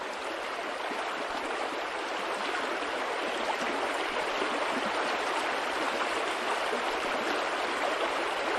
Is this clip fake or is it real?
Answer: real